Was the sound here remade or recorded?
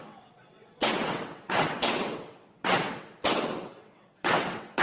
remade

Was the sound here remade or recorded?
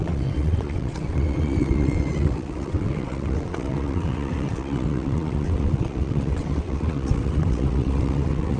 remade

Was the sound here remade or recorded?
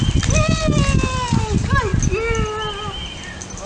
recorded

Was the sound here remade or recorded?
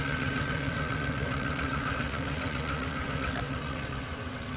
remade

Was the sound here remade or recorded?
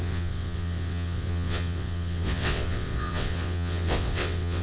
remade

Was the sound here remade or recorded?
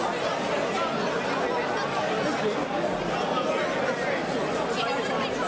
recorded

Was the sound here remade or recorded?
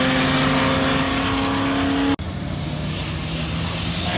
recorded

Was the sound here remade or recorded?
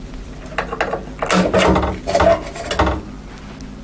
recorded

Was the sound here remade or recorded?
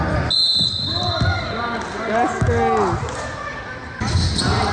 recorded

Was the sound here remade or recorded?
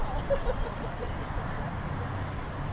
recorded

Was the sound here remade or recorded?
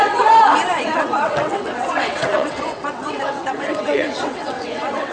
remade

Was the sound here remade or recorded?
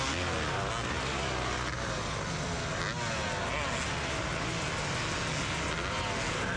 recorded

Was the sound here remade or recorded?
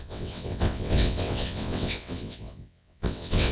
remade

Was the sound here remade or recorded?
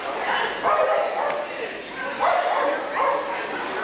recorded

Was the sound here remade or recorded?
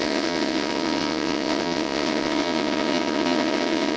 remade